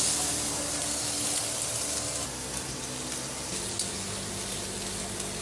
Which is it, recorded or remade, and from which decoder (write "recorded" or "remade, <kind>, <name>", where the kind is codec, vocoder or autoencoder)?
recorded